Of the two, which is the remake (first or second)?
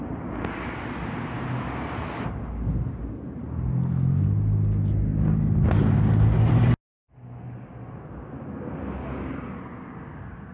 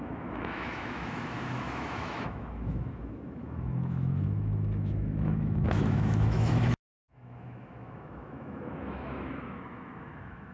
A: second